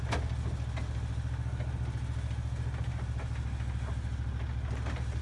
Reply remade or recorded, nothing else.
recorded